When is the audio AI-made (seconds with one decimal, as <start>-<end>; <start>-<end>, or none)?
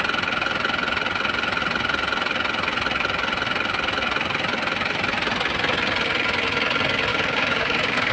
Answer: 7.1-8.1